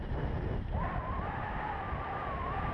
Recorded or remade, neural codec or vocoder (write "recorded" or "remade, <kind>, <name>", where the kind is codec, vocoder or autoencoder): recorded